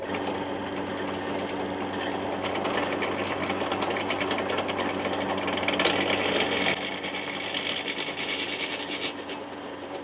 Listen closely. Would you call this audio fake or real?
real